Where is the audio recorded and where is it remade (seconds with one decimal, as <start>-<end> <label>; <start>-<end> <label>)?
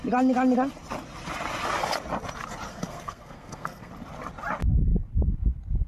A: 0.0-2.7 recorded; 2.7-3.9 remade; 3.9-5.9 recorded